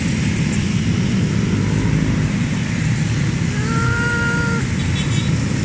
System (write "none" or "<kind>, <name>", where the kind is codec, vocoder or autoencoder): none